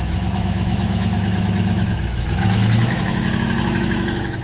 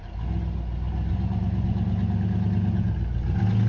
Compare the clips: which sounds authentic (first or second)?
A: second